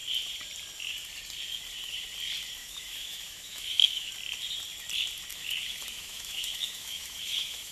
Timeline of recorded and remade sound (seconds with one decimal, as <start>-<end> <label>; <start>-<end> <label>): 0.0-2.6 recorded; 2.6-4.1 remade; 4.1-5.3 recorded; 5.3-7.7 remade